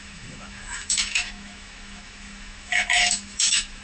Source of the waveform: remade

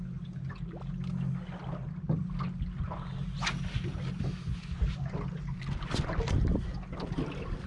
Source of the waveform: recorded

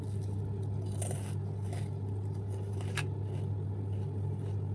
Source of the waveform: recorded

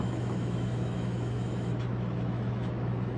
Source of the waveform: remade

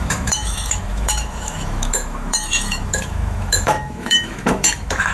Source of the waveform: remade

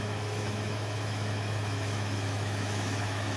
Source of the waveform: remade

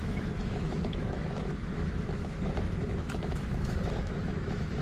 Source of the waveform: remade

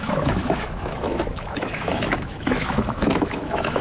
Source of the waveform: remade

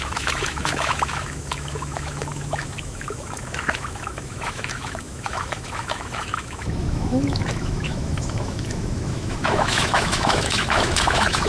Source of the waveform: remade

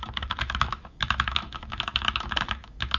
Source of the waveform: remade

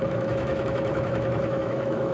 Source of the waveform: remade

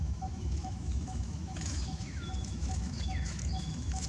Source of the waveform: remade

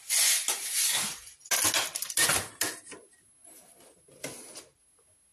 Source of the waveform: recorded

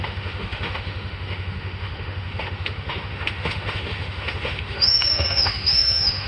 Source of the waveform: remade